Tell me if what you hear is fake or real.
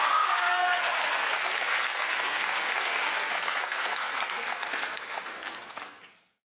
fake